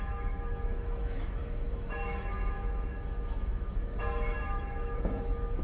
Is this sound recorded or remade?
remade